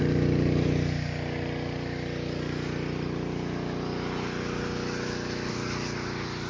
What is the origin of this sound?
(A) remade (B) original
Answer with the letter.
B